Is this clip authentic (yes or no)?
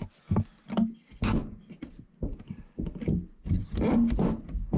yes